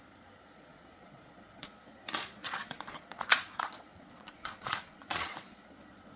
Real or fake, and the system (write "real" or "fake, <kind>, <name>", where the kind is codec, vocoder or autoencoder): fake, vocoder, Vocos